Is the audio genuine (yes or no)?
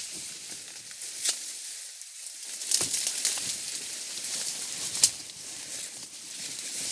no